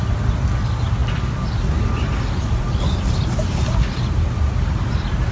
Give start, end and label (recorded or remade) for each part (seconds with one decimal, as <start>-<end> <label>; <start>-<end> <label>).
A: 0.0-5.3 recorded